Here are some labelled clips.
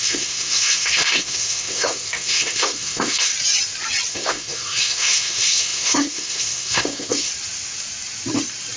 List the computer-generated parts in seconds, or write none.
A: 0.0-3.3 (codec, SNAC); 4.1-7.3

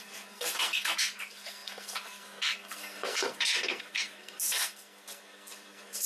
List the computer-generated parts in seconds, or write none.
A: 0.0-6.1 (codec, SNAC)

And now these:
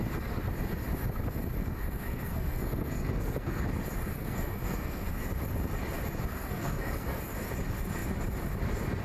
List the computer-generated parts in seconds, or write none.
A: 1.6-3.6 (codec, SNAC); 4.1-5.3; 6.3-7.2